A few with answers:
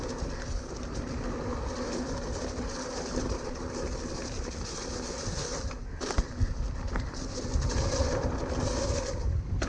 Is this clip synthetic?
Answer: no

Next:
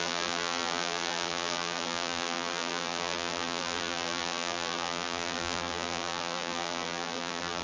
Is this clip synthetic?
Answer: yes